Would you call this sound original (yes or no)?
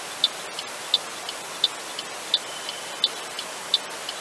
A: yes